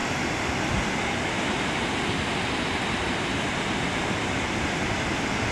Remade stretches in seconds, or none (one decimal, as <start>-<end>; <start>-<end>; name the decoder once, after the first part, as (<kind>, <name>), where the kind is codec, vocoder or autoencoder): none